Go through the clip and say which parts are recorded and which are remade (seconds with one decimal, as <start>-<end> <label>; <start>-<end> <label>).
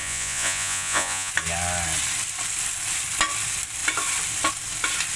0.0-1.3 remade; 1.3-5.2 recorded